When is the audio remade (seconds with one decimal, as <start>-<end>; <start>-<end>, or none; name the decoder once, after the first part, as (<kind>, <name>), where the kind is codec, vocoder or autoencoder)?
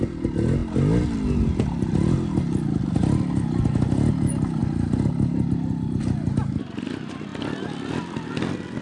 none